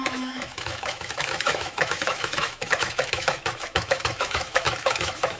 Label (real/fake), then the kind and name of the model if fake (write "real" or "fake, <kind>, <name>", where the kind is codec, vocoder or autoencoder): fake, autoencoder, DAC-VAE